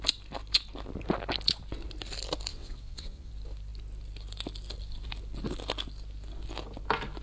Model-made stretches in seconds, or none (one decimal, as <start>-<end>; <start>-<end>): 2.5-3.3